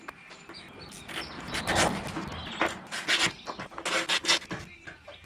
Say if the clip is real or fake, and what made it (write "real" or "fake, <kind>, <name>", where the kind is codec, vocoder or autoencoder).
real